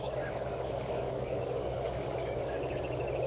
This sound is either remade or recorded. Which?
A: remade